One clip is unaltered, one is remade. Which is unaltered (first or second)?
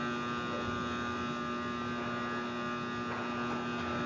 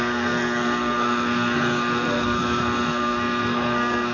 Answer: first